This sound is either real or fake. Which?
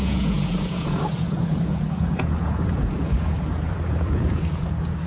fake